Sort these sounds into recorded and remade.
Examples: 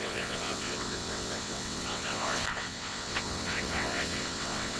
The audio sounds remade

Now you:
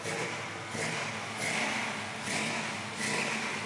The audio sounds recorded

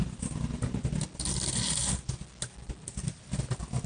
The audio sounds recorded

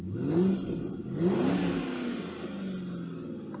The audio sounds recorded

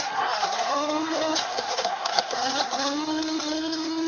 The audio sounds remade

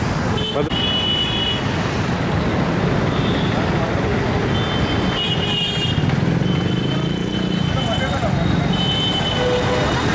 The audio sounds recorded